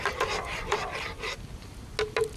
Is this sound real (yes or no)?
yes